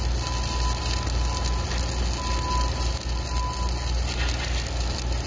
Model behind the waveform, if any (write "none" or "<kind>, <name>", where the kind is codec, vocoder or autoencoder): none